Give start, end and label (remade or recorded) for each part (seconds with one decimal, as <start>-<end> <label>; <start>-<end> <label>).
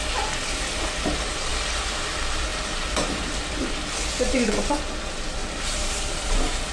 0.0-2.5 recorded; 2.5-3.7 remade; 3.7-5.4 recorded; 5.4-6.7 remade